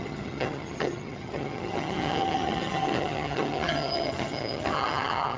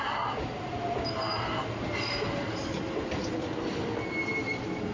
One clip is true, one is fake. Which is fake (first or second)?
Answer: first